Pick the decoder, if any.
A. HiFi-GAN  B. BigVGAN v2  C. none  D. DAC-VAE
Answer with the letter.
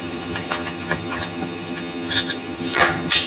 A